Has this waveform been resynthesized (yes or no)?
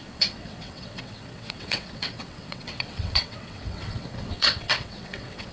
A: yes